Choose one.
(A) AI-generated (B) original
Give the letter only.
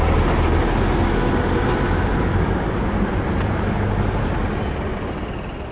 B